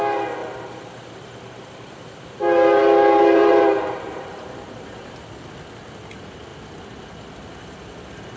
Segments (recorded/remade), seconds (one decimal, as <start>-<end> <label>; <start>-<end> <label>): 0.0-0.4 recorded; 0.4-5.2 remade; 5.2-8.4 recorded